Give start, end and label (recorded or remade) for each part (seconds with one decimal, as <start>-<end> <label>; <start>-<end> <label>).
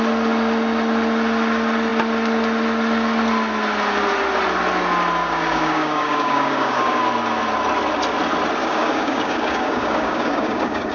0.0-5.2 recorded; 5.2-7.0 remade; 7.0-8.6 recorded; 8.6-10.9 remade